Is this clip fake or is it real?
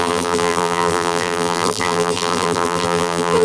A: fake